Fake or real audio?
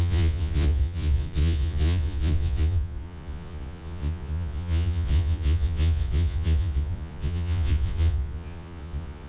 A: fake